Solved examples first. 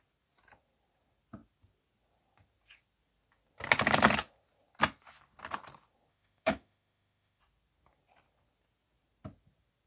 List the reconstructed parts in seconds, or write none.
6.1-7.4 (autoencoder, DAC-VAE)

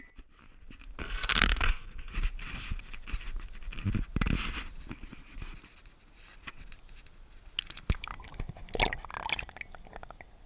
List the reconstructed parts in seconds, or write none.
1.0-2.1 (codec, SNAC)